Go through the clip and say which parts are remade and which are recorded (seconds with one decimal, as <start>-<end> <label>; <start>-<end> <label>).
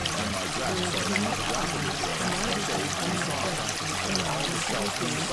0.0-5.3 recorded